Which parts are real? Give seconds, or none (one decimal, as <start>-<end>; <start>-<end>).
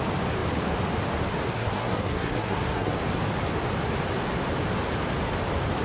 0.0-1.5; 3.0-5.8